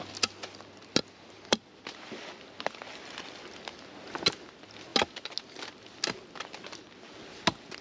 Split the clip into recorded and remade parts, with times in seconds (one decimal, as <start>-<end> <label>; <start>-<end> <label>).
0.0-7.8 recorded